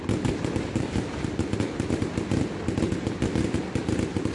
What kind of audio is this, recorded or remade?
recorded